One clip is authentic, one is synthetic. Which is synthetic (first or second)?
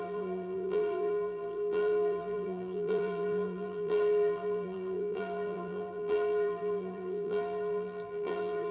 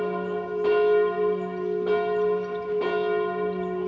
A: first